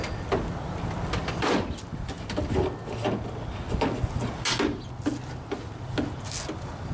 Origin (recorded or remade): recorded